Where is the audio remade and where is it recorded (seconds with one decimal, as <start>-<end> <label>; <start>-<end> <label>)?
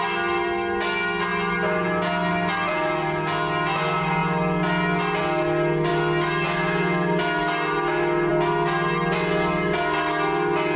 0.0-10.8 recorded